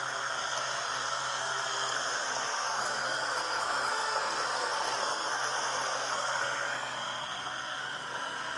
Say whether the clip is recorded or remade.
remade